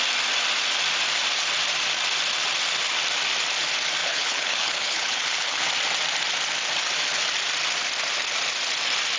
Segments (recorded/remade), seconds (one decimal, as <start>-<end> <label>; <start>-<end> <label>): 0.0-4.0 recorded; 4.0-5.7 remade; 5.7-9.2 recorded